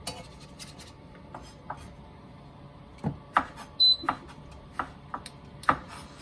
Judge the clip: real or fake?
real